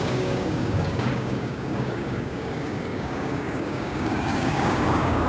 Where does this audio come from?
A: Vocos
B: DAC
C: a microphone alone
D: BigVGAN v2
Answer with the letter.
B